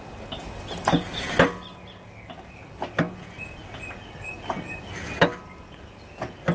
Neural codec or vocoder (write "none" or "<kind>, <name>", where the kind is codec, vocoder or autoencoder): none